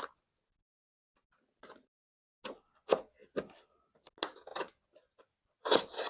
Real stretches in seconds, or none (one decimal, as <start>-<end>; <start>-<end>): 0.0-6.1